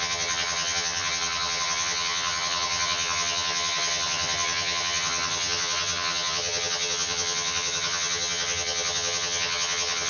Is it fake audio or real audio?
fake